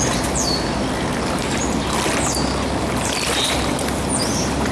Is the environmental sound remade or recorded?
recorded